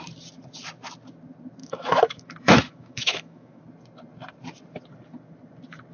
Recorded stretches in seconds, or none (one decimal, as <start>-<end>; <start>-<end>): 0.0-1.6; 3.6-5.9